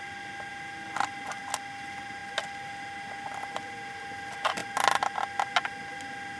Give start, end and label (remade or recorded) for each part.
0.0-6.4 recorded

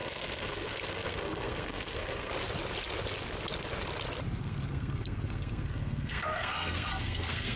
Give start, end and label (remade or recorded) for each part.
0.0-2.3 remade; 2.3-4.4 recorded; 4.4-7.6 remade

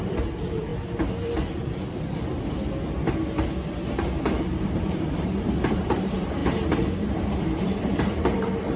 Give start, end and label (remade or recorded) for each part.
0.0-0.7 remade; 0.7-4.0 recorded; 4.0-6.4 remade; 6.4-7.6 recorded; 7.6-8.8 remade

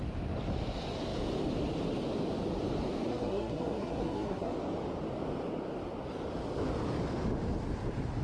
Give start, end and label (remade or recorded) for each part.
0.0-3.1 recorded; 3.1-4.5 remade; 4.5-8.2 recorded

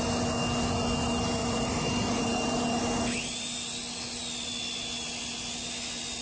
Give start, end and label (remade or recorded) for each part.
0.0-1.4 recorded; 1.4-2.8 remade; 2.8-6.2 recorded

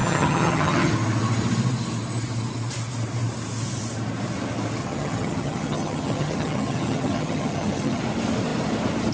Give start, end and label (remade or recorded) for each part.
0.0-0.9 remade; 0.9-4.8 recorded; 4.8-8.0 remade; 8.0-9.1 recorded

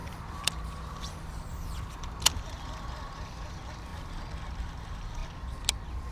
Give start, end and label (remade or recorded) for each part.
0.0-3.9 remade; 3.9-4.6 recorded; 4.6-5.2 remade; 5.2-6.1 recorded

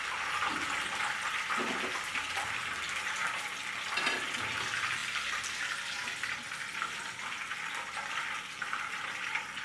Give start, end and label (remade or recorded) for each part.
0.0-9.6 recorded